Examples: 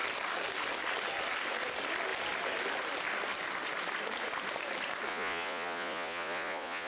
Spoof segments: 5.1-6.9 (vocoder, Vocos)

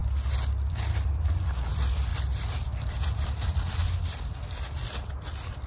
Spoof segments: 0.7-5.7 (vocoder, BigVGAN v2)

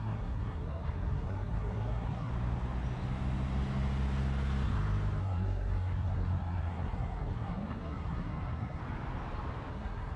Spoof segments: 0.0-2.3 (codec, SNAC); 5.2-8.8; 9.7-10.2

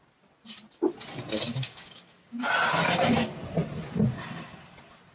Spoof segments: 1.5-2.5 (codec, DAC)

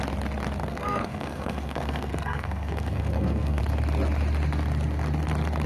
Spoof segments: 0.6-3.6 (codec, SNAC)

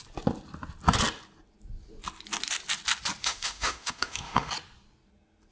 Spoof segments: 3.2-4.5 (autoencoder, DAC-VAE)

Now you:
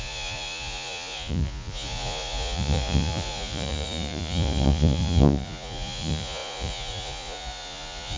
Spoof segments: 0.0-8.2 (vocoder, Vocos)

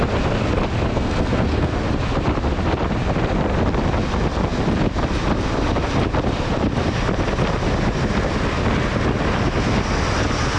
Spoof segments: 0.9-1.9 (codec, SNAC)